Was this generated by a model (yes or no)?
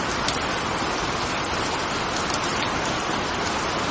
no